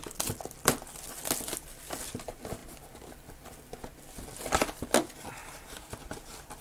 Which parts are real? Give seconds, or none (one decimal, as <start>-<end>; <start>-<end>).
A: 0.0-5.4; 6.0-6.6